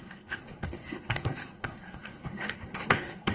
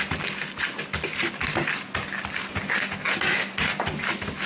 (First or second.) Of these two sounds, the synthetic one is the first